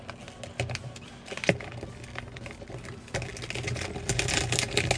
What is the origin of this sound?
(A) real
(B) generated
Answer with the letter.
A